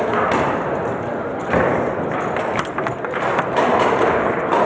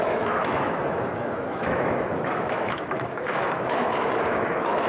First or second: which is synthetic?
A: second